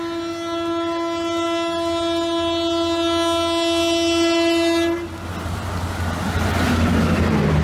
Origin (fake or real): real